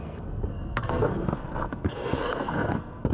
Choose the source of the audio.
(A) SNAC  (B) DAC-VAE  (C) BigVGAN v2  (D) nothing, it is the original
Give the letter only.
A